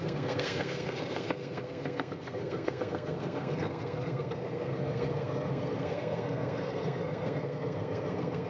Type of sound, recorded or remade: remade